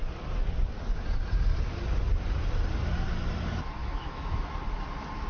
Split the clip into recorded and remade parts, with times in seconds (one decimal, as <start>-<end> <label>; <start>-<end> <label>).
0.0-3.8 recorded; 3.8-4.5 remade; 4.5-5.3 recorded